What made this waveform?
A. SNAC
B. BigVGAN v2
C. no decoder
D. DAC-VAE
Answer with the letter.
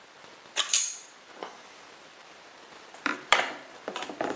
B